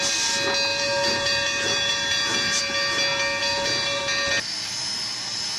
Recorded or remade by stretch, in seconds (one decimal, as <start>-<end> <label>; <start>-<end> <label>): 0.0-0.7 recorded; 0.7-2.6 remade; 2.6-3.4 recorded; 3.4-4.0 remade; 4.0-5.6 recorded